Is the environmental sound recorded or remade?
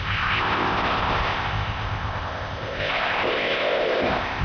remade